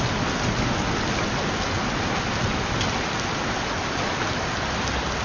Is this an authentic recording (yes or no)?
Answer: yes